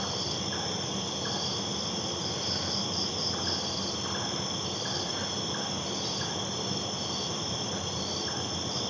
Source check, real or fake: fake